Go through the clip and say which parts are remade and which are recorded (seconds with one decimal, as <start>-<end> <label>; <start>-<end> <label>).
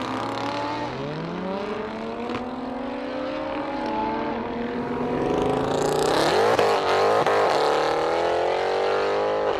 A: 0.0-9.6 recorded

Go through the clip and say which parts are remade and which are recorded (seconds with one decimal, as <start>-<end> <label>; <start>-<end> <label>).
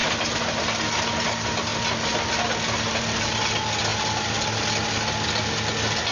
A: 0.0-0.6 remade; 0.6-6.1 recorded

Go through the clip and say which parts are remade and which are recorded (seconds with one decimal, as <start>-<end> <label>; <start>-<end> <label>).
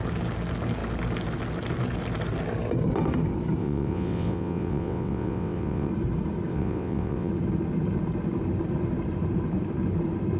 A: 0.0-3.6 recorded; 3.6-5.9 remade; 5.9-6.5 recorded; 6.5-7.3 remade; 7.3-10.4 recorded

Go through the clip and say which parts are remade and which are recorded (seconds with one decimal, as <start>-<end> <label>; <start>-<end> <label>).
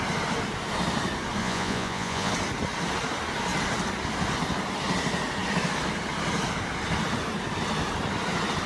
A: 0.0-1.4 recorded; 1.4-2.3 remade; 2.3-8.7 recorded